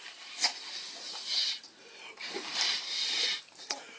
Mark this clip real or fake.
real